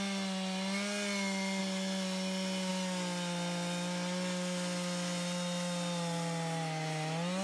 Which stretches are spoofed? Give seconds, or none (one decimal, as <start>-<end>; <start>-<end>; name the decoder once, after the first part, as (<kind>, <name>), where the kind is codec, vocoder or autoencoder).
none